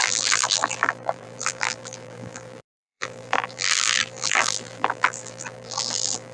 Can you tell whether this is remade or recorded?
remade